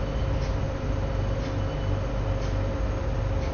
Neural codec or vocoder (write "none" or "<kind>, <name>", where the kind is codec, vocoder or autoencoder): none